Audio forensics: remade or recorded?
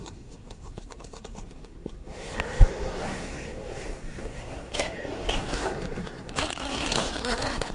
remade